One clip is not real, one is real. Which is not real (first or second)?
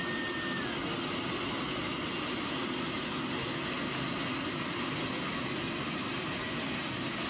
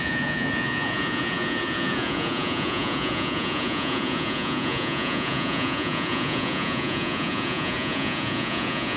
second